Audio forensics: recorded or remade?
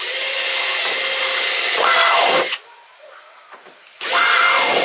recorded